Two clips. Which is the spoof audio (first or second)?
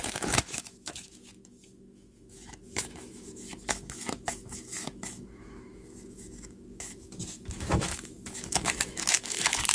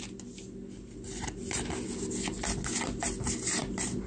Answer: first